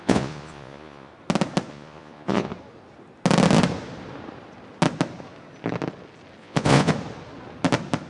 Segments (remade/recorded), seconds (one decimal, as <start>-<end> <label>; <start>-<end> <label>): 0.0-1.1 remade; 1.1-1.7 recorded; 1.7-2.5 remade; 2.5-6.4 recorded; 6.4-6.9 remade; 6.9-8.1 recorded